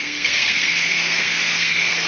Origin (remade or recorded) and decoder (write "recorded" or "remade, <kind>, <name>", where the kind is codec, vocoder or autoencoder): remade, codec, SNAC